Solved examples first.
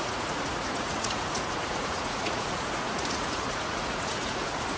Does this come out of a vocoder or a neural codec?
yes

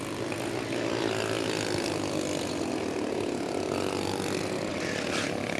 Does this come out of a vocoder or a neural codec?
no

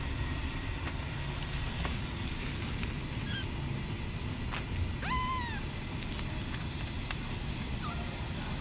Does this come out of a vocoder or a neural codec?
no